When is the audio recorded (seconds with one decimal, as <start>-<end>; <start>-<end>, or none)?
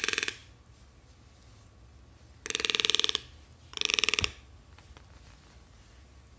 0.0-6.4